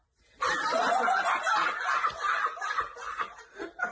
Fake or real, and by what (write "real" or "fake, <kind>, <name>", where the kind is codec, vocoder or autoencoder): real